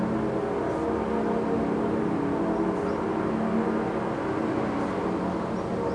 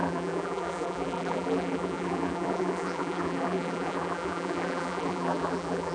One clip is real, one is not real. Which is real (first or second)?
first